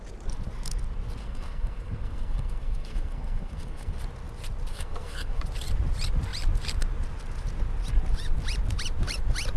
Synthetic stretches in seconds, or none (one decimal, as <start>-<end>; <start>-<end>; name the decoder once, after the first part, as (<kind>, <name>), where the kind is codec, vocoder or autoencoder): 1.2-4.0 (codec, SNAC); 4.7-5.4

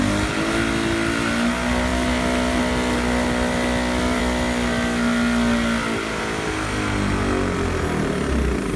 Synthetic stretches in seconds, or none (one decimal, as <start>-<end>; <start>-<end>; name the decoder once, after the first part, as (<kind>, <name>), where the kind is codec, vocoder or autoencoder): none

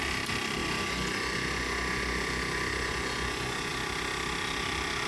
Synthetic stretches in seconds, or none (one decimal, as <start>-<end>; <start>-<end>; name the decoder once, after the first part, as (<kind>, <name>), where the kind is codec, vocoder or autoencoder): 0.6-3.7 (vocoder, Vocos)

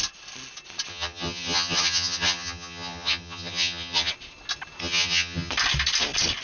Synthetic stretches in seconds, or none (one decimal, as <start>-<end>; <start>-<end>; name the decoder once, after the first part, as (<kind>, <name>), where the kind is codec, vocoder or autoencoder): 0.9-4.1 (vocoder, HiFi-GAN); 4.8-5.5

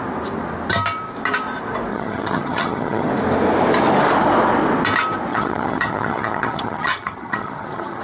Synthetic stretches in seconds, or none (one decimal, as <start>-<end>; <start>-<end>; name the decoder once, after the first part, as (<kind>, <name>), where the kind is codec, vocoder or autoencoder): 1.9-3.1 (vocoder, HiFi-GAN); 5.3-8.0

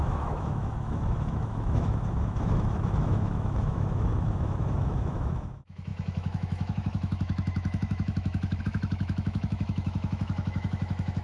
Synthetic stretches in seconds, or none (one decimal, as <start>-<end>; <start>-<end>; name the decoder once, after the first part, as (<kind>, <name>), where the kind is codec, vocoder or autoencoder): 0.0-11.2 (autoencoder, DAC-VAE)